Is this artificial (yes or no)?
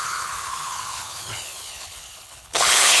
yes